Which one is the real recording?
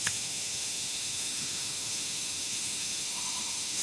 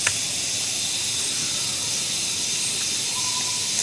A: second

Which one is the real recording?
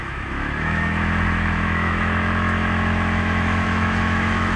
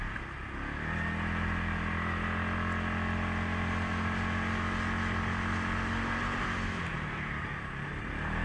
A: second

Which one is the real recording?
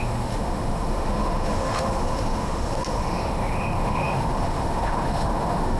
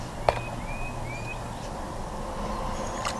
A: second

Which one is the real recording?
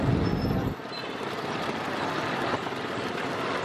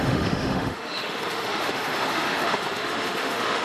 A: first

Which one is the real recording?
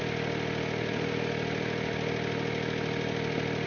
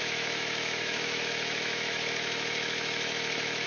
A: first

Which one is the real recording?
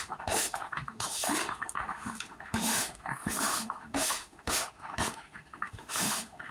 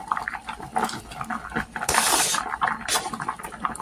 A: second